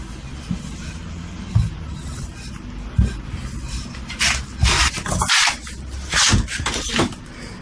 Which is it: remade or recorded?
recorded